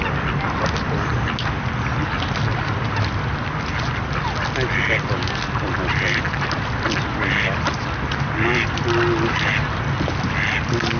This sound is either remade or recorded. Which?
recorded